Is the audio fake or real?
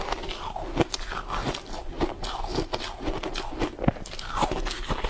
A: real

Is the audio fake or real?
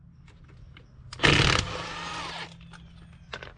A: real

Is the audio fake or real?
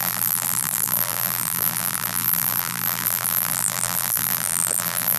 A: fake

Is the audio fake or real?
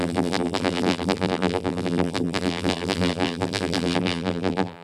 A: fake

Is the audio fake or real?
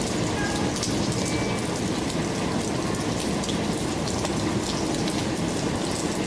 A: real